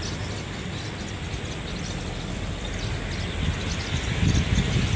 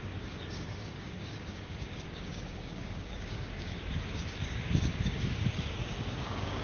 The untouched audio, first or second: first